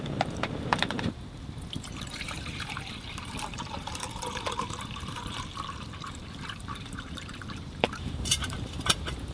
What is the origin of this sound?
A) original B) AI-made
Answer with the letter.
B